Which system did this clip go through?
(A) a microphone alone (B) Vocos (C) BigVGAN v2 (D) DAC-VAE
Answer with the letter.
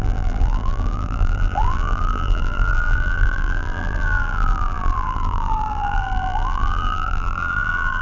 C